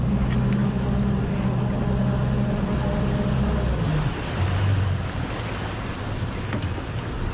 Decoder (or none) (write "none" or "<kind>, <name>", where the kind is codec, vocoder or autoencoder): none